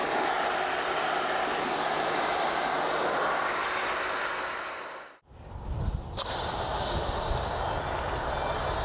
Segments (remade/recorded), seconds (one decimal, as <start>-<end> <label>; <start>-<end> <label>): 0.0-8.8 recorded